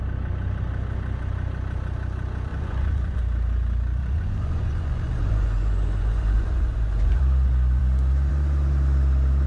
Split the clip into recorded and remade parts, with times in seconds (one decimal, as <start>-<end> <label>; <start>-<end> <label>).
0.0-2.5 recorded; 2.5-3.2 remade; 3.2-4.0 recorded; 4.0-7.2 remade; 7.2-9.5 recorded